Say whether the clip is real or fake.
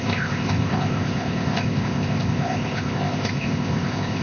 fake